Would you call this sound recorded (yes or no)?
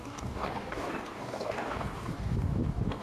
no